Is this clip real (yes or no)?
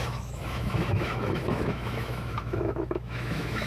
no